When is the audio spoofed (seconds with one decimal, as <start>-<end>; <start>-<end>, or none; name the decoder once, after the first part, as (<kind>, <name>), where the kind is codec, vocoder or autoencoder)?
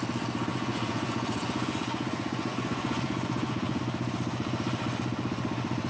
0.5-3.8 (vocoder, Vocos)